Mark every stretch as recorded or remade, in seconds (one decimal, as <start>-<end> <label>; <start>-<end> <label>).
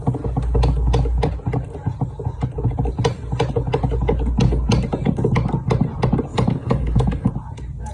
0.0-6.3 recorded; 6.3-7.3 remade; 7.3-7.9 recorded